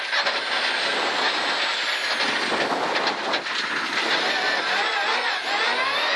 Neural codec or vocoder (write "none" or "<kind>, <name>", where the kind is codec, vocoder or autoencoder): none